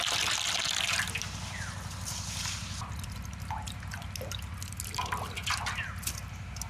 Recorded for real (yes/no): yes